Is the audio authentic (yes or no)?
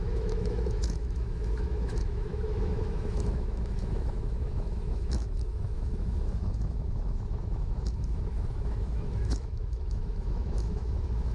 no